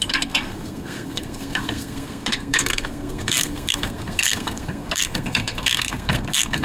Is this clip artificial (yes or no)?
yes